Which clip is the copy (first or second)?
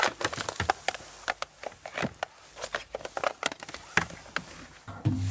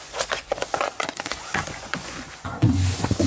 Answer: second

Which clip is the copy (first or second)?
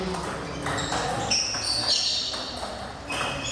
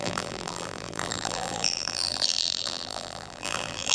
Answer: second